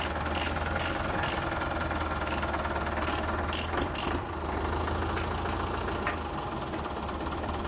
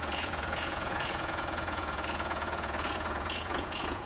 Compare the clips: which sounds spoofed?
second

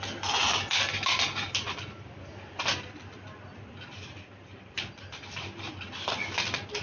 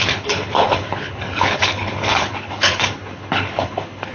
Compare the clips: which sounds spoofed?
second